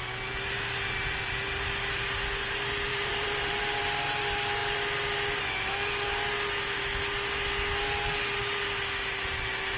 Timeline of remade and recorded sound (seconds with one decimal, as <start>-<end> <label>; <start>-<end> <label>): 0.0-2.9 recorded; 2.9-3.8 remade; 3.8-9.8 recorded